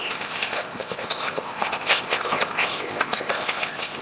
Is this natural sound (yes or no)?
no